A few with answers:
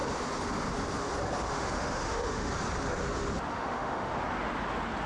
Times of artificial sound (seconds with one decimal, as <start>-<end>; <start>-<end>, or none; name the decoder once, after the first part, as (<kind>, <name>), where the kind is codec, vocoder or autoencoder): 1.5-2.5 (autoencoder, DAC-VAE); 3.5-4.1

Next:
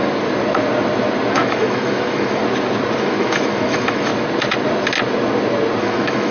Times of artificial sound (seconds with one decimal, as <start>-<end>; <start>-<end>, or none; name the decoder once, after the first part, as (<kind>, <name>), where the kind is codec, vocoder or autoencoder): 1.3-2.4 (autoencoder, DAC-VAE); 3.0-4.1; 5.8-6.3

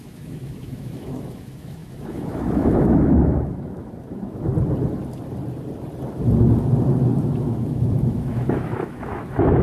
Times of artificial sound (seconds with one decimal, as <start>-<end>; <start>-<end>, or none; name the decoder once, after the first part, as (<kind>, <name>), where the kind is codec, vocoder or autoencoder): 0.0-4.5 (autoencoder, DAC-VAE); 7.2-9.6